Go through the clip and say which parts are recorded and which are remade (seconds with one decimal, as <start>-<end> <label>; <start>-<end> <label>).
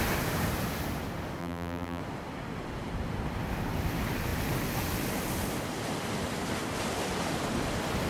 0.0-1.4 recorded; 1.4-2.0 remade; 2.0-8.1 recorded